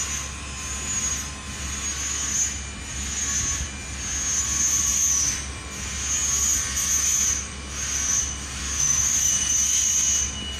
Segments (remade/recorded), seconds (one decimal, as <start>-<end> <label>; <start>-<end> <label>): 0.0-8.6 recorded; 8.6-9.3 remade; 9.3-10.6 recorded